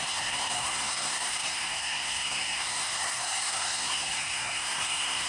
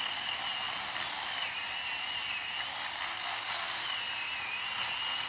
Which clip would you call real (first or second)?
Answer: second